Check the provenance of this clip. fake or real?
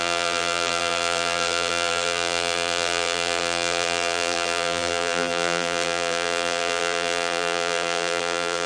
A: fake